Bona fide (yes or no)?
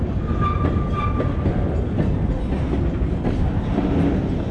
yes